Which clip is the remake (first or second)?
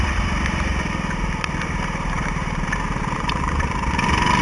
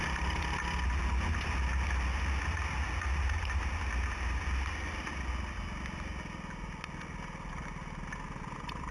first